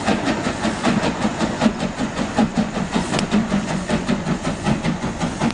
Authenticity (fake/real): fake